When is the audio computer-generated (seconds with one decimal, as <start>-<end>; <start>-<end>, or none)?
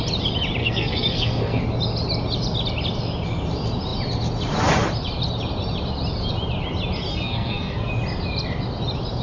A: 0.6-1.6; 7.1-7.9